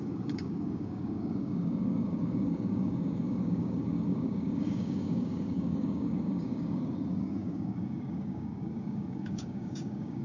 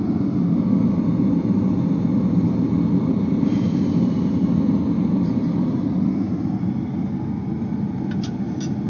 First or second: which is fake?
first